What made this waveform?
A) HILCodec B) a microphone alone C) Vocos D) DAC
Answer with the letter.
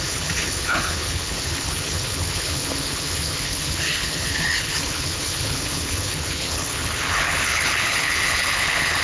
A